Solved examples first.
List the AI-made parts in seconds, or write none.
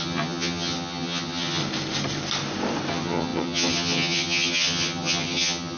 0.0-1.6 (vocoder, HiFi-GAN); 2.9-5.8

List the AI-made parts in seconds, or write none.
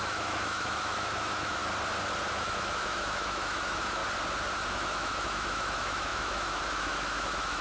0.0-1.6 (autoencoder, DAC-VAE); 2.3-4.0; 4.7-7.6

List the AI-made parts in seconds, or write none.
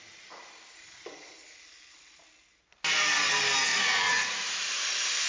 3.7-4.6 (vocoder, Vocos)